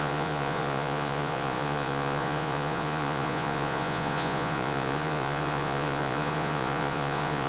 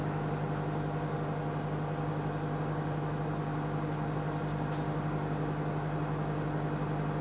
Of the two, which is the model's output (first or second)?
first